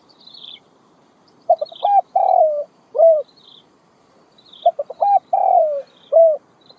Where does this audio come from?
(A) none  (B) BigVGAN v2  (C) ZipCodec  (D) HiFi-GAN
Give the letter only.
B